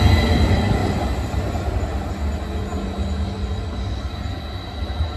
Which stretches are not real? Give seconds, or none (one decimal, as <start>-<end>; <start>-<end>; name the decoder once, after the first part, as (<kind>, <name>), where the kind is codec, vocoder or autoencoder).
none